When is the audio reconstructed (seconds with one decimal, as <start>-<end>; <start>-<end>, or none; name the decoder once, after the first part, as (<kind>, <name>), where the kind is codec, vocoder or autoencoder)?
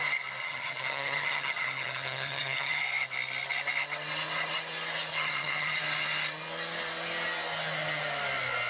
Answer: 0.4-2.8 (vocoder, HiFi-GAN); 5.1-5.8